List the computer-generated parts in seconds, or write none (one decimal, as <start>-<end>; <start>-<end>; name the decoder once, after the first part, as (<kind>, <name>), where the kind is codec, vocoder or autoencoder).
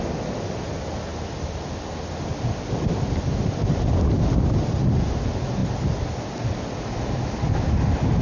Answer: none